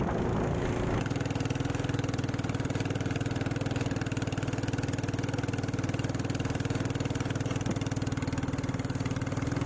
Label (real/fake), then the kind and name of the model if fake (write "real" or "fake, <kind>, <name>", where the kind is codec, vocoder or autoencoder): real